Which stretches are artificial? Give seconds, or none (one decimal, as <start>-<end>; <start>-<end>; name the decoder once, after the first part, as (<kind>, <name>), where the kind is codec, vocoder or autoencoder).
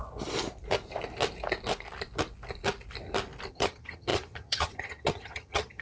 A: 3.5-5.8 (vocoder, HiFi-GAN)